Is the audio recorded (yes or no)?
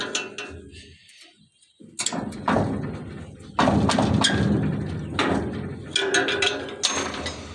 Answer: yes